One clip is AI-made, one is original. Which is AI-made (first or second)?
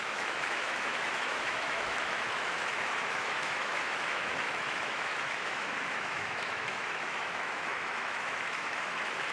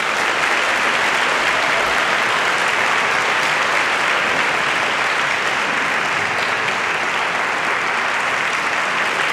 first